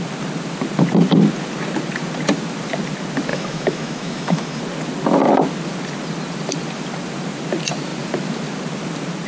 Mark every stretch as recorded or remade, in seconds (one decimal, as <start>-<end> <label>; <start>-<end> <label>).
0.0-3.3 recorded; 3.3-4.6 remade; 4.6-9.3 recorded